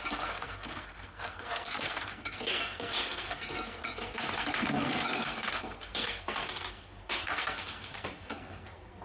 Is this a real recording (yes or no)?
no